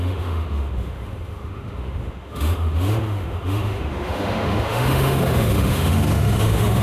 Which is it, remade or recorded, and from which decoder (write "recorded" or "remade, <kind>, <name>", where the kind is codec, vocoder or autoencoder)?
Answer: remade, autoencoder, DAC-VAE